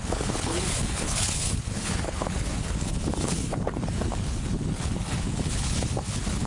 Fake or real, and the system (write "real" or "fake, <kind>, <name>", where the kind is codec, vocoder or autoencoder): fake, codec, HILCodec